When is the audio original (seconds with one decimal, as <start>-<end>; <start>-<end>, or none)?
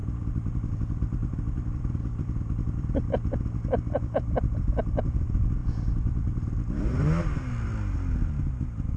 3.1-9.0